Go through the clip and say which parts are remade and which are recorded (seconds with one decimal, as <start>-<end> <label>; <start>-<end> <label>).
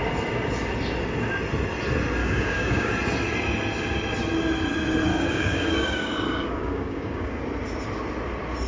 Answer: 0.0-2.2 recorded; 2.2-2.9 remade; 2.9-5.1 recorded; 5.1-7.4 remade; 7.4-8.7 recorded